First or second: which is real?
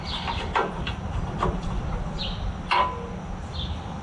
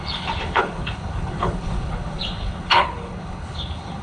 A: first